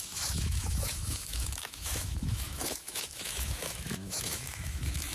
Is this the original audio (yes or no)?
no